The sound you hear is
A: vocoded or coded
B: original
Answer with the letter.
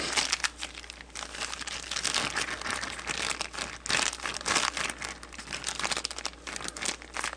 B